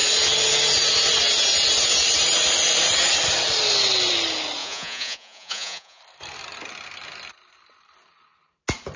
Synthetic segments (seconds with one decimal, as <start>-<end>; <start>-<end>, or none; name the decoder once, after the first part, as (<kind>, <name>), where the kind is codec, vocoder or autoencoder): 4.6-6.0 (vocoder, Vocos)